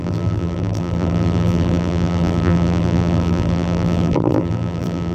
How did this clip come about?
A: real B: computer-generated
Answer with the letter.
B